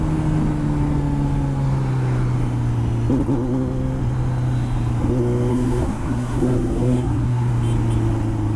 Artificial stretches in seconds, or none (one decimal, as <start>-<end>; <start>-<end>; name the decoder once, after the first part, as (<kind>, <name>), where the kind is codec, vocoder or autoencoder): 5.5-7.5 (codec, SNAC)